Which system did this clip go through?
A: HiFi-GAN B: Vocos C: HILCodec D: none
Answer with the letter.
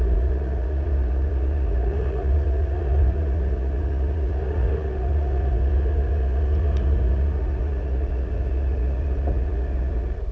B